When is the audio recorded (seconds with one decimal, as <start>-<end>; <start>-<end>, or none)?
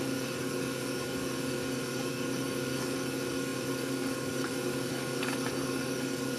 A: none